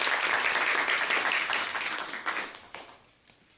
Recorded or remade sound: recorded